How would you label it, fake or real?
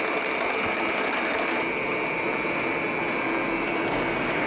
real